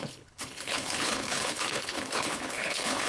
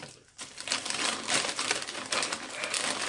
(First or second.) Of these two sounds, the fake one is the first